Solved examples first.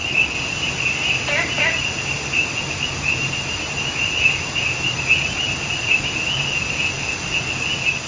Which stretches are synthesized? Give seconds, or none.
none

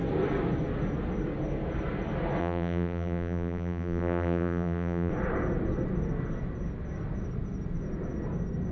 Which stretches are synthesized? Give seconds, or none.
2.4-5.1 (vocoder, BigVGAN v2)

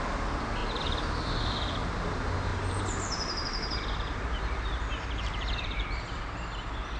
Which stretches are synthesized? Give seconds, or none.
2.5-6.0 (vocoder, BigVGAN v2)

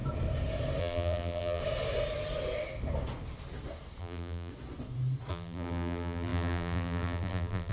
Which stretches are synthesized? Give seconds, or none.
0.8-1.6 (vocoder, BigVGAN v2); 4.0-4.5; 5.3-7.7

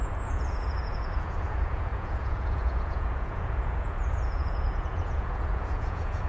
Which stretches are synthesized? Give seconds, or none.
0.0-6.3 (vocoder, Vocos)

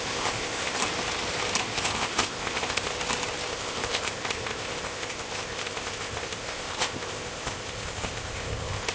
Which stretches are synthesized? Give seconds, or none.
0.0-0.8 (codec, ZipCodec); 1.6-2.9; 3.5-8.9

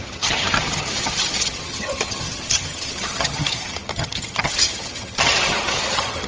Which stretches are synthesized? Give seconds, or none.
0.0-6.3 (vocoder, HiFi-GAN)

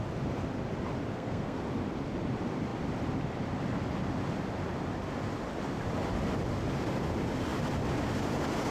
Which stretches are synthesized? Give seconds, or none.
1.1-1.6 (codec, SNAC)